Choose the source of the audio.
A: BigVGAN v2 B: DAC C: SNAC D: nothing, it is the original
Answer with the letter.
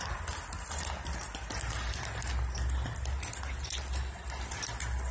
D